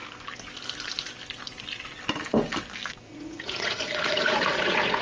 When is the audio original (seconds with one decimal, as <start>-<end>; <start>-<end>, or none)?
0.0-3.0